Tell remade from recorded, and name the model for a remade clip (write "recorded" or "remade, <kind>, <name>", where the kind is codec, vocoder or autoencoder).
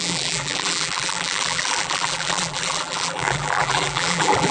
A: remade, vocoder, BigVGAN v2